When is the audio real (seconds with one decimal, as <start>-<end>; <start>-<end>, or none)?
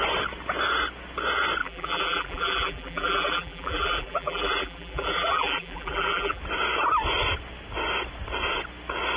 0.0-1.6; 6.4-9.2